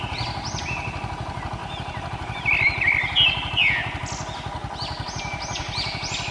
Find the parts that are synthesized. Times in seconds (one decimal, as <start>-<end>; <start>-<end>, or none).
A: none